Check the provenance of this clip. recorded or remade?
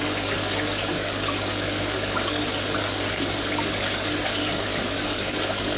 remade